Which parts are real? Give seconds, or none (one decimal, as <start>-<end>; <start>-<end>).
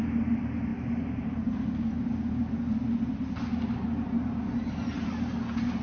0.0-5.8